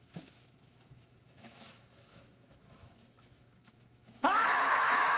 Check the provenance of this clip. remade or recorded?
remade